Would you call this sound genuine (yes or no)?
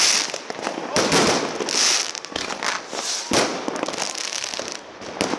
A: yes